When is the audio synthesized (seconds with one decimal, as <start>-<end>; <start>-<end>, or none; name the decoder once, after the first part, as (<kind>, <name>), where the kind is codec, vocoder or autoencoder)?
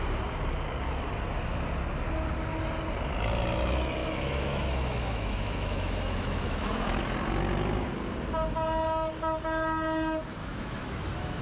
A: 4.0-7.0 (autoencoder, DAC-VAE); 10.4-11.4